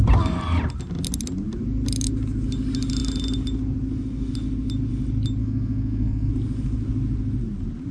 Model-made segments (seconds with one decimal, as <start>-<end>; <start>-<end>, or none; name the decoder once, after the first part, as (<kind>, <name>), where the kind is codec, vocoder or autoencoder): 5.4-6.3 (codec, SNAC)